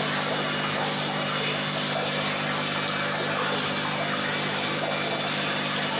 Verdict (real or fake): real